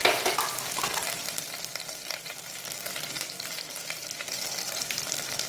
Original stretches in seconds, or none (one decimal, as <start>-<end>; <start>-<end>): 0.0-1.4